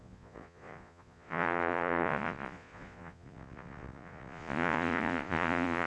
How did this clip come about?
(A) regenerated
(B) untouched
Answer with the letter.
A